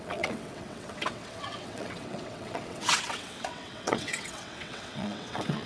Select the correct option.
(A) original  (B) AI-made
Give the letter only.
B